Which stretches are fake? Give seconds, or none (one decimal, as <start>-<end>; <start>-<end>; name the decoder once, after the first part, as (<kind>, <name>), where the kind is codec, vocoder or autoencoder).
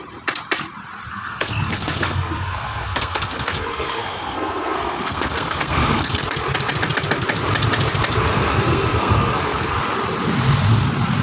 1.1-6.2 (codec, SNAC); 8.3-9.7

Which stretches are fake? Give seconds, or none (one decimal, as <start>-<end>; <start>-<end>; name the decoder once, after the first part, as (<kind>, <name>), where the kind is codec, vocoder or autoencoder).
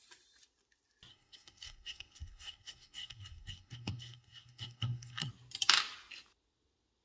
1.1-5.3 (codec, SNAC)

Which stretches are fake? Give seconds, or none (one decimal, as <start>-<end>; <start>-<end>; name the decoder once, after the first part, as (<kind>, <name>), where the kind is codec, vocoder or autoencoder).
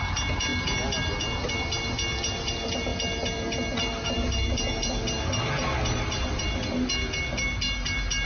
none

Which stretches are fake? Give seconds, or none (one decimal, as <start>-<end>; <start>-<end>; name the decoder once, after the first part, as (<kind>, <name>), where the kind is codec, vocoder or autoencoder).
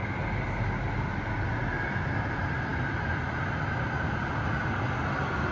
none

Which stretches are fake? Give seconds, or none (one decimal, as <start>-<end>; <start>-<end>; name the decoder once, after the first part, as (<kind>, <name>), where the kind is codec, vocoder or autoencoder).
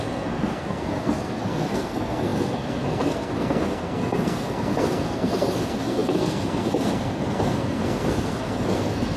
0.0-9.2 (codec, SNAC)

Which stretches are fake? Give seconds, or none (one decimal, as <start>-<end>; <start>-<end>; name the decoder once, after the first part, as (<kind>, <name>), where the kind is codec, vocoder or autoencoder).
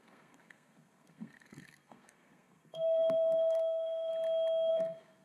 0.0-4.1 (codec, SNAC); 4.7-5.2